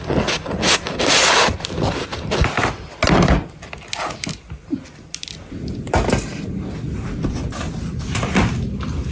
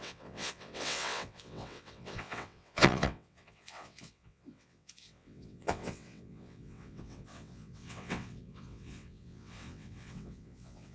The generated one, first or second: second